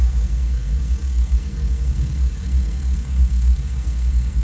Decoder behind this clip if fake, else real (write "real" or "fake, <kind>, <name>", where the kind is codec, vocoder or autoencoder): fake, codec, SNAC